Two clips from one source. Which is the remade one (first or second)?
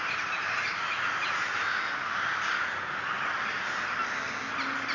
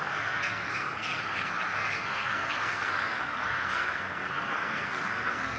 second